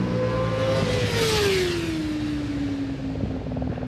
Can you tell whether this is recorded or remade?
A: recorded